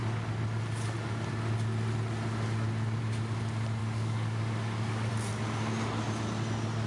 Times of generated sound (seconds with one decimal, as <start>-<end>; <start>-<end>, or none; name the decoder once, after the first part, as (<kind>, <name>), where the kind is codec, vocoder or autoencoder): 3.8-5.1 (codec, DAC)